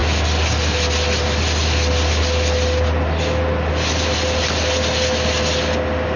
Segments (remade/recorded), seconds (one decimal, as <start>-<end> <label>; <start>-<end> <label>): 0.0-6.2 recorded